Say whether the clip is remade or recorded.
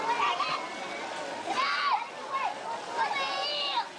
recorded